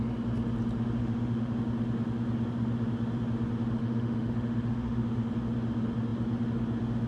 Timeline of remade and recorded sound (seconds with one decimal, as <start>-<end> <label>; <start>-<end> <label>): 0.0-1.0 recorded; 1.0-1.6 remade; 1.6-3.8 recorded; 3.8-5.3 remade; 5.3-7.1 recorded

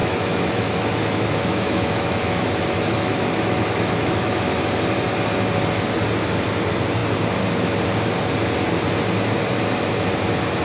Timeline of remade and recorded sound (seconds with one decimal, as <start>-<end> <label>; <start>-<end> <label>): 0.0-4.7 remade; 4.7-10.6 recorded

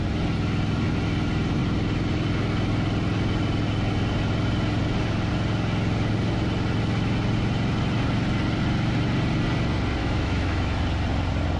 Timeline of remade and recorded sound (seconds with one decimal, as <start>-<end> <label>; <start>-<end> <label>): 0.0-10.0 recorded; 10.0-10.8 remade; 10.8-11.6 recorded

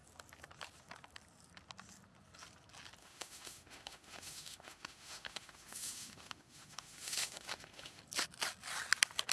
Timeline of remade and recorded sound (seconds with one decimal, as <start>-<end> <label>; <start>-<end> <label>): 0.0-3.0 recorded; 3.0-8.0 remade; 8.0-9.3 recorded

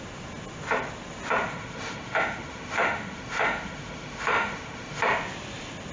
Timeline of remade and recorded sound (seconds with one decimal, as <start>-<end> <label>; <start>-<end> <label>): 0.0-1.5 recorded; 1.5-5.0 remade; 5.0-5.9 recorded

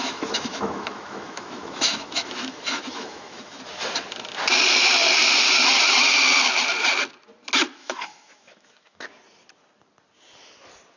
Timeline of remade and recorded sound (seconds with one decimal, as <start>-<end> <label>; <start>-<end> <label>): 0.0-3.6 remade; 3.6-7.8 recorded; 7.8-9.0 remade; 9.0-11.0 recorded

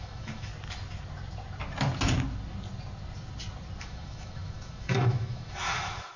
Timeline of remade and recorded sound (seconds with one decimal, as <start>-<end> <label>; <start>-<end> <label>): 0.0-0.5 remade; 0.5-3.8 recorded; 3.8-6.2 remade